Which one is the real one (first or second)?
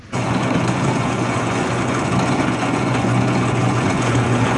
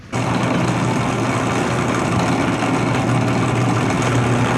second